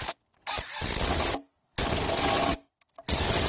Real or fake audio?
real